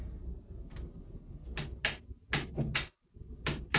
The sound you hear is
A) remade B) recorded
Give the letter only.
B